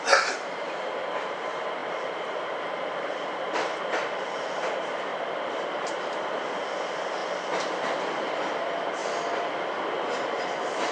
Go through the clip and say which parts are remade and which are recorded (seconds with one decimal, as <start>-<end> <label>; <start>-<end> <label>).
0.0-1.8 recorded; 1.8-4.2 remade; 4.2-5.1 recorded; 5.1-5.9 remade; 5.9-7.2 recorded; 7.2-8.5 remade; 8.5-10.9 recorded